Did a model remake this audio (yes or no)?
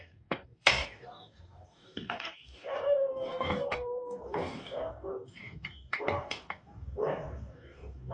yes